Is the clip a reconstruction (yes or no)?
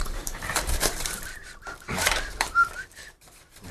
yes